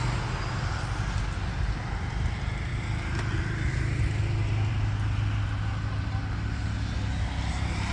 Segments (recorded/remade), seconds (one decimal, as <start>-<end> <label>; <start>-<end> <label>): 0.0-7.9 recorded